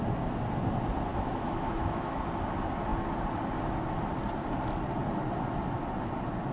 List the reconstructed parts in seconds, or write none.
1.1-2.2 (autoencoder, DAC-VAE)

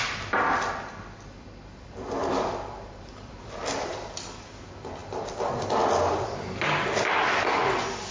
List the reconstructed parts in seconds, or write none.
2.2-4.6 (vocoder, BigVGAN v2); 5.0-6.3

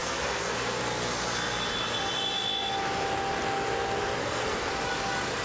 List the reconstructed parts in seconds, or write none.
0.0-0.8 (codec, SNAC); 4.2-4.7